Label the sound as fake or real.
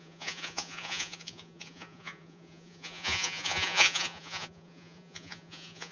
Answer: fake